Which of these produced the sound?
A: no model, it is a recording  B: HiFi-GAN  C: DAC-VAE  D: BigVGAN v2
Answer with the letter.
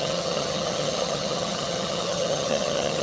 B